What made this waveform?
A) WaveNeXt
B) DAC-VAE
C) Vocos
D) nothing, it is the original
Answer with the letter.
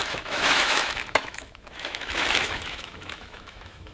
B